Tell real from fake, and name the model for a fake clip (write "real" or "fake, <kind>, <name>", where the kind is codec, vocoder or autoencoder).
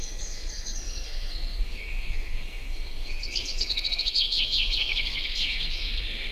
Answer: fake, codec, SNAC